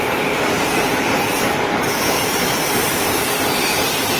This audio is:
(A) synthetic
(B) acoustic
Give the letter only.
A